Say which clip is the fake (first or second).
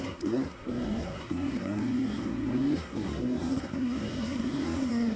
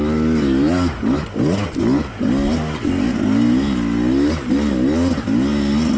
first